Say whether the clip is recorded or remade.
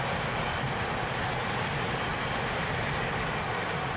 recorded